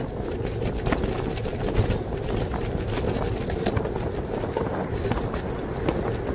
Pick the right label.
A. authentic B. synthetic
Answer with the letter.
A